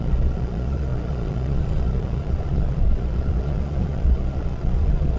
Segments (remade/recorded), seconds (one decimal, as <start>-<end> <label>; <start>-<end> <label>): 0.0-5.2 remade